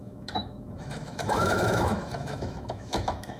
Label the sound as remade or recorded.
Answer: remade